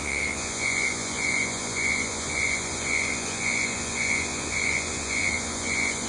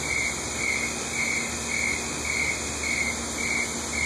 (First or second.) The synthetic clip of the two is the first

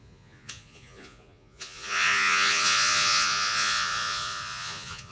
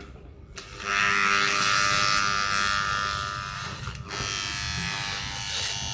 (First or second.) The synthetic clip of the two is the first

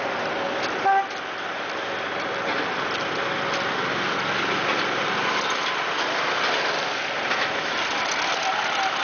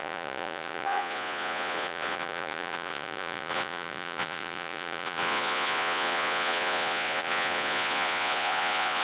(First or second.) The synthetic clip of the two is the second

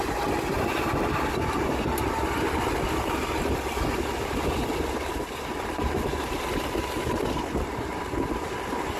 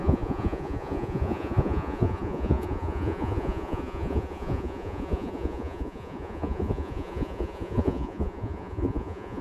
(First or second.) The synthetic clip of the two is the second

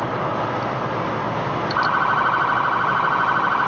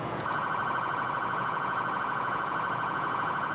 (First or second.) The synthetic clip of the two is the second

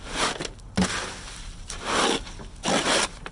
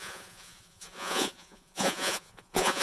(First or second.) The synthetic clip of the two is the second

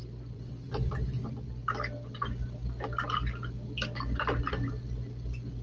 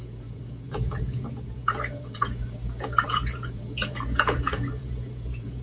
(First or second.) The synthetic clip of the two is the second